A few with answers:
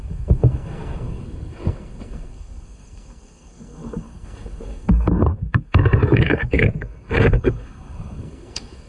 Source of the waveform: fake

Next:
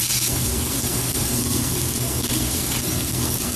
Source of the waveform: fake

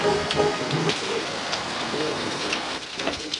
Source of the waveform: fake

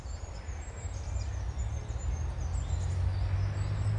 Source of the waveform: real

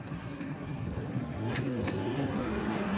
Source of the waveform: fake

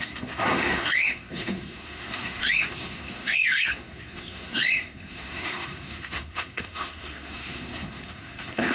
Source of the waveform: fake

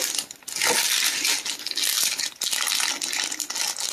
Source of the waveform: real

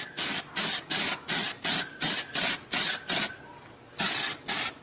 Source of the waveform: real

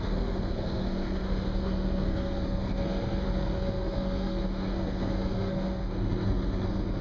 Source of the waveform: fake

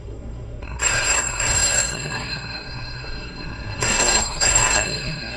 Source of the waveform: fake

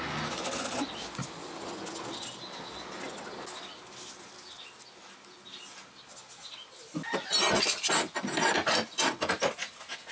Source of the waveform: real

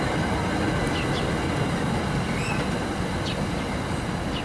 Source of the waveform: real